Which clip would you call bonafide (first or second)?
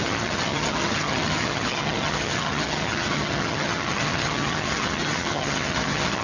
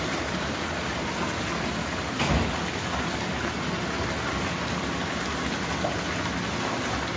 second